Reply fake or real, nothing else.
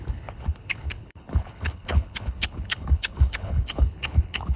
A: fake